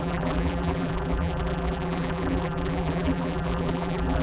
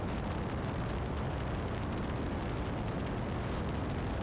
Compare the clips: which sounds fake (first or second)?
first